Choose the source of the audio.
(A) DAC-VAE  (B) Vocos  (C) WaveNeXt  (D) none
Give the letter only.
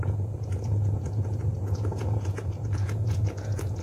B